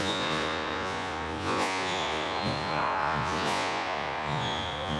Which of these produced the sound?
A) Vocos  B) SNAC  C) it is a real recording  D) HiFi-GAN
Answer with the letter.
A